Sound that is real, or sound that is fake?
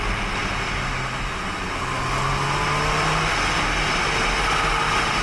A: real